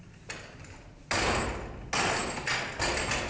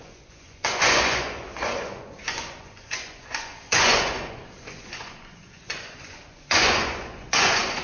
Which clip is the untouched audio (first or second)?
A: first